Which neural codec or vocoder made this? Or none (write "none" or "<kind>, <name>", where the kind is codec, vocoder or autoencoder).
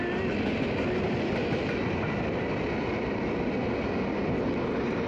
none